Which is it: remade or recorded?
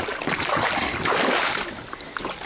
recorded